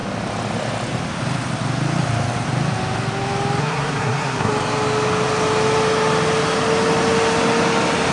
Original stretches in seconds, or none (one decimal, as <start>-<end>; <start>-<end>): 0.0-3.6; 4.5-8.1